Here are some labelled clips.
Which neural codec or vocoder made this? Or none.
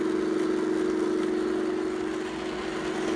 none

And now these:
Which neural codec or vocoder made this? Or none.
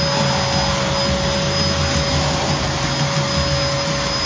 none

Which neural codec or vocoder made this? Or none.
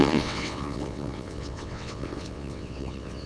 vocoder, WaveNeXt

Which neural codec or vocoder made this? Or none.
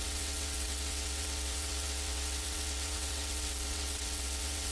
vocoder, WaveNeXt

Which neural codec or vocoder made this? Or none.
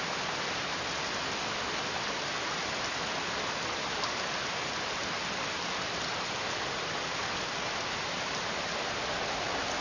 none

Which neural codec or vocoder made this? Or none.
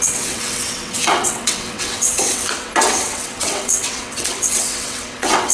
vocoder, WaveNeXt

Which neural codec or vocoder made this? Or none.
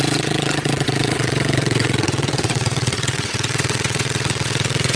vocoder, WaveNeXt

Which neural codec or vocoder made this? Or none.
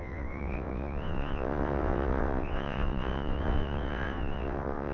vocoder, WaveNeXt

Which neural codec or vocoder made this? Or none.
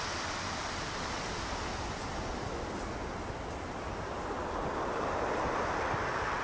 none